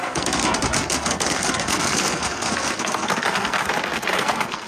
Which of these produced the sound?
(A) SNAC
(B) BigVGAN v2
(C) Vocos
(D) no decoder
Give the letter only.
A